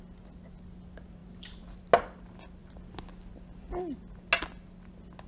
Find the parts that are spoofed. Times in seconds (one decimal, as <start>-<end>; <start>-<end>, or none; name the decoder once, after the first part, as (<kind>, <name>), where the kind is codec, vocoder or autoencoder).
none